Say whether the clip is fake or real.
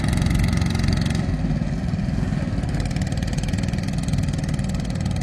real